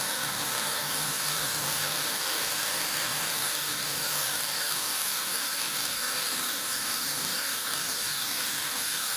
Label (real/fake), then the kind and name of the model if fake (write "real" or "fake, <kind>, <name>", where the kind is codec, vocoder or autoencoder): fake, codec, DAC